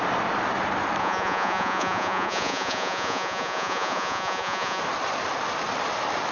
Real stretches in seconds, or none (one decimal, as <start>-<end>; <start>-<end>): 0.0-1.0; 4.8-6.3